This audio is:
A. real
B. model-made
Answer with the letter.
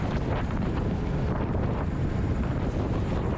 A